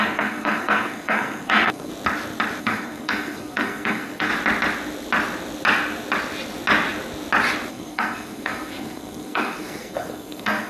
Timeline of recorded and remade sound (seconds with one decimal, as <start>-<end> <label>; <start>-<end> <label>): 0.0-1.9 remade; 1.9-2.6 recorded; 2.6-4.3 remade; 4.3-7.7 recorded; 7.7-10.7 remade